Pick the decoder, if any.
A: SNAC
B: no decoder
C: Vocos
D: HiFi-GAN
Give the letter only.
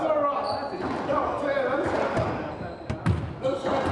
B